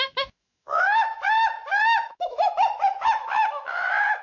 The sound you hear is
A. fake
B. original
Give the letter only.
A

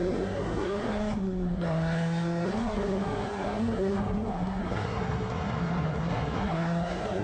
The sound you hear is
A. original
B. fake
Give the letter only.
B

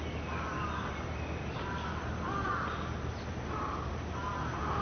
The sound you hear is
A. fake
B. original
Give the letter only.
B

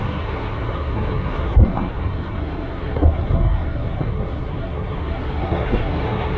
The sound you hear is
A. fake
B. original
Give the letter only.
A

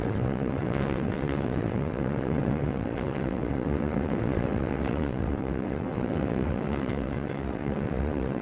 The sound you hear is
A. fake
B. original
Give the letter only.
A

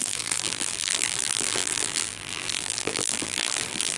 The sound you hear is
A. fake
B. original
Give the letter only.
A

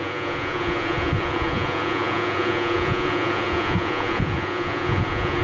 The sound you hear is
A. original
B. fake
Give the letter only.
B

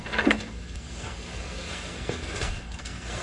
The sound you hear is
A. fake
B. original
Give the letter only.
A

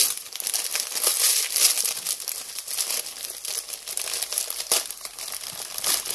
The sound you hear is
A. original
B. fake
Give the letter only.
A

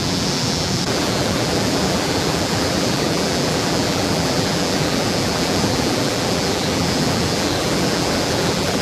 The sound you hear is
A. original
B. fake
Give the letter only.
B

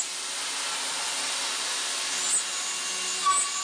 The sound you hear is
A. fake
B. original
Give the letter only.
B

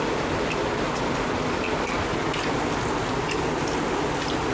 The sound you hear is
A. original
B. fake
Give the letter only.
A